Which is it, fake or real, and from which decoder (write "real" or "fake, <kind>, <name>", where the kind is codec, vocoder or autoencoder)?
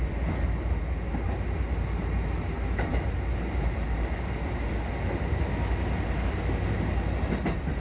real